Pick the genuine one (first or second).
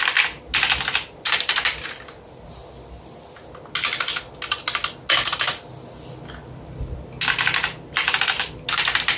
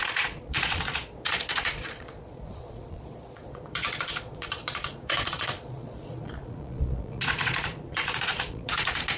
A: first